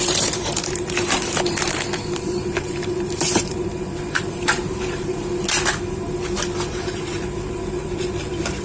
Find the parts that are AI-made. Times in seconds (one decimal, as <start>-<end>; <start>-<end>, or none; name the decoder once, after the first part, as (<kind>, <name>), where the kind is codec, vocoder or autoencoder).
0.0-5.1 (vocoder, BigVGAN v2); 6.7-8.6